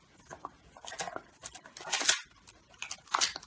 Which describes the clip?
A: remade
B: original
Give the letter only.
B